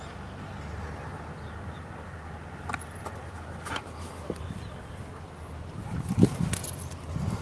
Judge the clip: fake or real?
real